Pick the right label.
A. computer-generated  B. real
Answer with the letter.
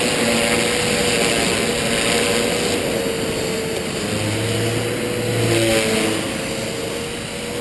B